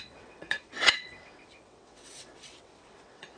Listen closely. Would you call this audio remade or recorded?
remade